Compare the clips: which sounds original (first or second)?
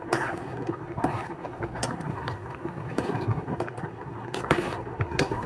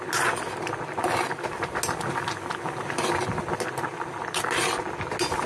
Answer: second